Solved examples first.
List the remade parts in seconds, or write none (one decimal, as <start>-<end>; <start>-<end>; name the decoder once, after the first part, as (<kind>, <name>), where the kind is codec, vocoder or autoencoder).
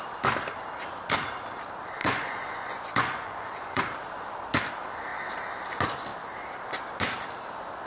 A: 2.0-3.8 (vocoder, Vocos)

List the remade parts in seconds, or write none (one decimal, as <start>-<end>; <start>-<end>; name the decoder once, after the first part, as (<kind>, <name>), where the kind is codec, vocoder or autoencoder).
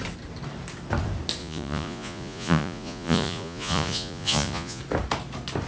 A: 1.4-4.8 (vocoder, Vocos)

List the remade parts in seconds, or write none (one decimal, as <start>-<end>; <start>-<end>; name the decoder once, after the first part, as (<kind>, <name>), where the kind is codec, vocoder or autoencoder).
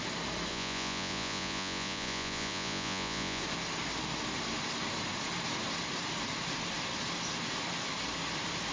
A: 0.5-3.4 (vocoder, Vocos)